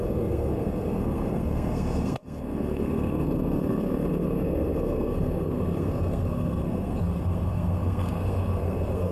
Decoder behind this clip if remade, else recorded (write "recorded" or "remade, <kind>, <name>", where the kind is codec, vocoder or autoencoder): remade, codec, SNAC